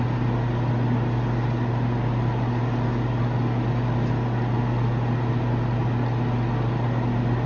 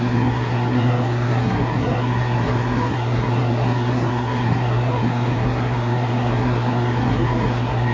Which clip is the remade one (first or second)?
second